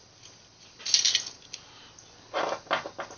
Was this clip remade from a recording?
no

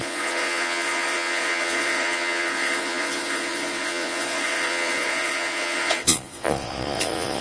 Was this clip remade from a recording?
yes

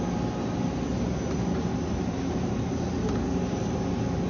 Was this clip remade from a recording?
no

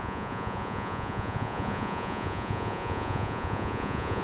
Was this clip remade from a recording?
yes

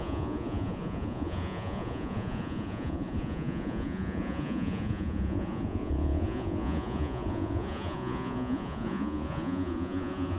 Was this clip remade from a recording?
yes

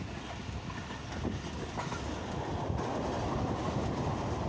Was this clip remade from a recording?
no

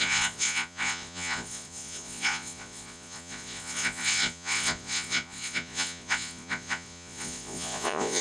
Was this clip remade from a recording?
yes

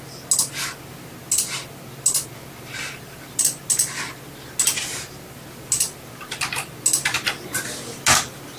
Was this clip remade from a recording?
no